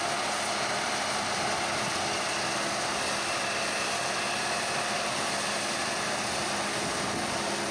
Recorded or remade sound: recorded